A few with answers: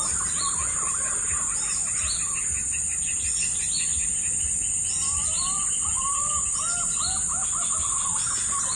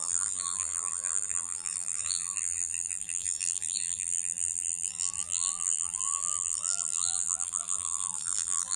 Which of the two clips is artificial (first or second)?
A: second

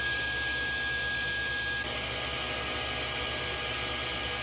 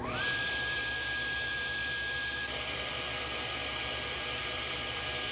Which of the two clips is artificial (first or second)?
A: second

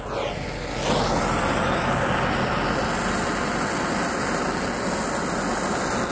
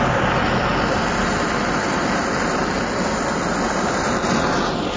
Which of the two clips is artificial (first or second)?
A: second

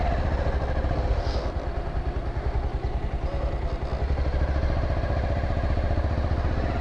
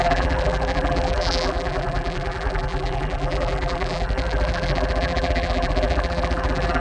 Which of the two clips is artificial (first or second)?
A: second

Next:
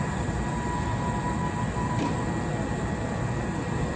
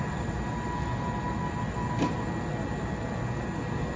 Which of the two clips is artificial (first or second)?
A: first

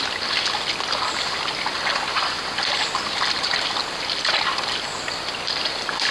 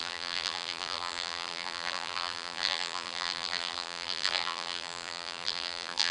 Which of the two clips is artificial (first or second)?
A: second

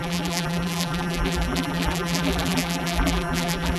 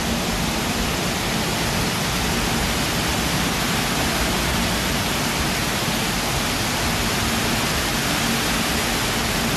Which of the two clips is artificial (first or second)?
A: first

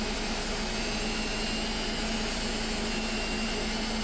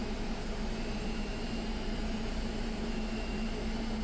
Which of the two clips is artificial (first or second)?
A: second